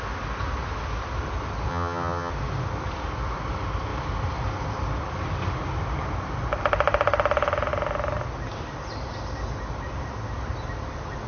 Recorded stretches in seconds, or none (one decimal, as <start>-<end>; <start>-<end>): 0.0-1.7; 2.3-11.3